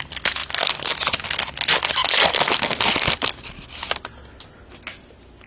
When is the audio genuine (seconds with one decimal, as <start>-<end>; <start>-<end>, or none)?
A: 0.0-5.5